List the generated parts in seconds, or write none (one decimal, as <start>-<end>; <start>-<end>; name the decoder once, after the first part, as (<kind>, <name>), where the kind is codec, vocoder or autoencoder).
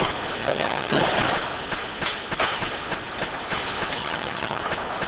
0.4-1.0 (vocoder, HiFi-GAN); 4.0-4.6